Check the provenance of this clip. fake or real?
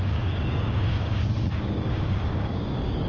fake